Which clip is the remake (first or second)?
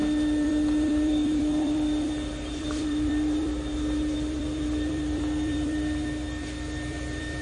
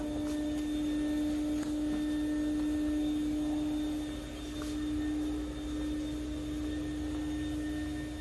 first